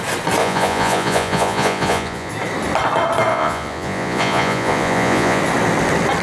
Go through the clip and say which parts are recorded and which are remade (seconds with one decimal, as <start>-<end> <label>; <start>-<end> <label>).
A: 0.0-0.4 recorded; 0.4-2.3 remade; 2.3-3.3 recorded; 3.3-5.4 remade; 5.4-6.2 recorded